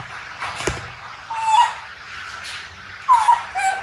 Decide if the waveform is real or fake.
real